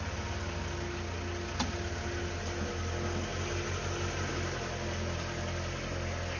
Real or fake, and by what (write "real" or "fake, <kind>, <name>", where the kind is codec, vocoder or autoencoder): real